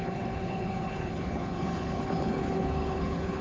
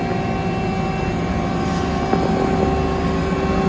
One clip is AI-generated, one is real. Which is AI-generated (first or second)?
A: first